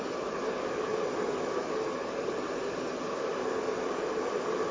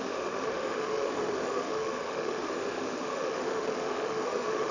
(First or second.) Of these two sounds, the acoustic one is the first